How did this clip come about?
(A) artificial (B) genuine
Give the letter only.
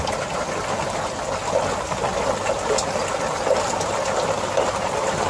B